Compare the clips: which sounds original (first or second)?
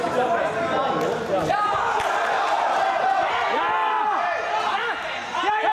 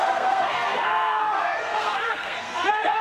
first